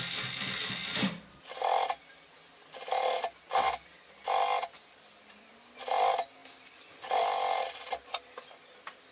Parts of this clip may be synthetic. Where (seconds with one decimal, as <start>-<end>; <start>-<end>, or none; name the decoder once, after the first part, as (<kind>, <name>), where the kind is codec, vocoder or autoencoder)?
none